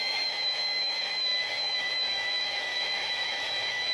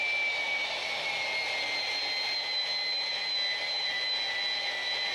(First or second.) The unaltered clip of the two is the second